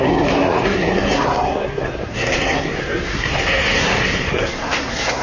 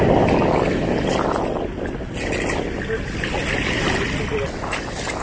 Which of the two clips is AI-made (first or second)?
first